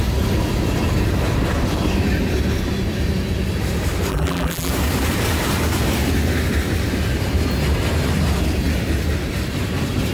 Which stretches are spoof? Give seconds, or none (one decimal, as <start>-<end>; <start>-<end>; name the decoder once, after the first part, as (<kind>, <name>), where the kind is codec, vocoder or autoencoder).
4.1-4.7 (vocoder, BigVGAN v2)